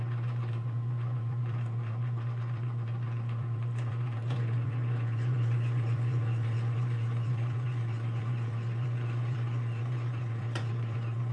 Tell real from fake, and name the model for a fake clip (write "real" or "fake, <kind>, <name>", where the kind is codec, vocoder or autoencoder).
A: fake, vocoder, Vocos